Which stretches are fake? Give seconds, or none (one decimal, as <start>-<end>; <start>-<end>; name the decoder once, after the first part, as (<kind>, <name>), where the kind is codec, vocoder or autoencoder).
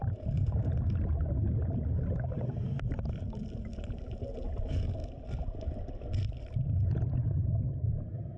none